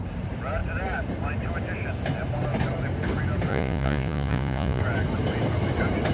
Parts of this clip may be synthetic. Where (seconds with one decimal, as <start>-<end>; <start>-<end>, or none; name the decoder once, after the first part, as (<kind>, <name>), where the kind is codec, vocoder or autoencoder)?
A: 3.5-4.8 (vocoder, Vocos)